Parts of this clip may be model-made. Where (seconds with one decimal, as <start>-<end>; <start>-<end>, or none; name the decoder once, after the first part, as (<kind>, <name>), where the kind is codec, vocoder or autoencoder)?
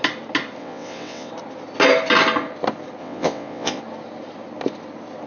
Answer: 0.6-1.3 (vocoder, WaveNeXt); 3.0-3.8